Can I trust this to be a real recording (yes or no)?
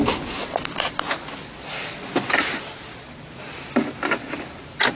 yes